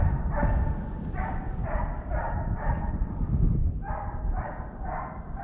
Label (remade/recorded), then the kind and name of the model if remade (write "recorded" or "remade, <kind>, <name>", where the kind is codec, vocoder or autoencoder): recorded